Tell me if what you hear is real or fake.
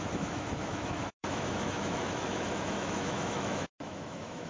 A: fake